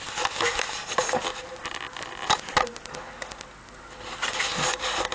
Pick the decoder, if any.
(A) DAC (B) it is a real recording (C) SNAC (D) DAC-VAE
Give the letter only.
B